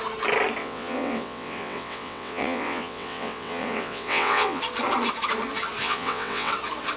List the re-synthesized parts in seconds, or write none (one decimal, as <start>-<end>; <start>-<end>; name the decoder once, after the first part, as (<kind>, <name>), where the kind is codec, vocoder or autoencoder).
0.6-4.6 (vocoder, WaveNeXt); 5.8-6.5